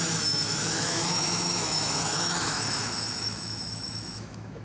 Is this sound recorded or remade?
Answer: remade